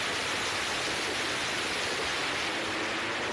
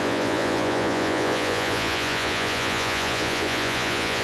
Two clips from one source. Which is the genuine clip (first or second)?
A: first